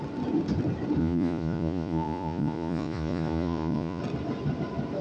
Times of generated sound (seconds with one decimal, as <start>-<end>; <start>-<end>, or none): 1.0-4.0